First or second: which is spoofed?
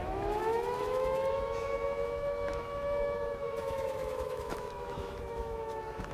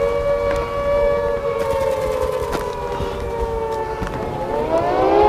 first